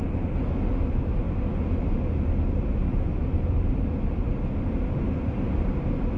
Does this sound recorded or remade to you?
recorded